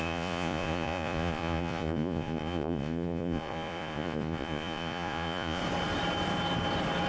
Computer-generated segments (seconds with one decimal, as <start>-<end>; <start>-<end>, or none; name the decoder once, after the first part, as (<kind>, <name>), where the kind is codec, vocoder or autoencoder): 0.0-5.6 (vocoder, Vocos)